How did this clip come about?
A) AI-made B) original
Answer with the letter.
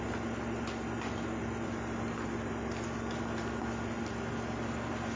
B